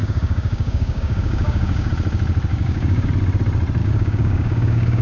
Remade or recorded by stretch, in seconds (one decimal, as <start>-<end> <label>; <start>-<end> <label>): 0.0-1.9 remade; 1.9-2.5 recorded; 2.5-3.1 remade; 3.1-3.8 recorded; 3.8-5.0 remade